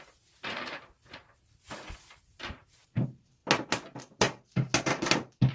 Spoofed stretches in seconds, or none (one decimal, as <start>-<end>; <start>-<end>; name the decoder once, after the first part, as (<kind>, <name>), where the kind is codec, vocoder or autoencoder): 0.0-3.4 (vocoder, BigVGAN v2); 4.2-4.7